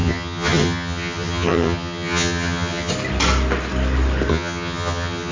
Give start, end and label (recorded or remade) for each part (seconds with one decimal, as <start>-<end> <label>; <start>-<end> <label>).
0.0-2.9 remade; 2.9-4.3 recorded; 4.3-5.3 remade